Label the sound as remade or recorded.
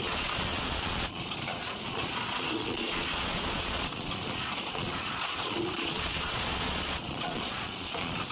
remade